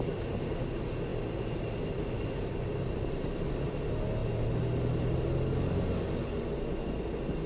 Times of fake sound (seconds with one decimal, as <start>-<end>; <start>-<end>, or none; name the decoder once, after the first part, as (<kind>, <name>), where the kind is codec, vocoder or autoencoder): none